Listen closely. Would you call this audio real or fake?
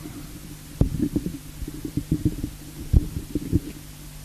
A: real